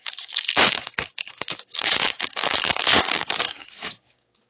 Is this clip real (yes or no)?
no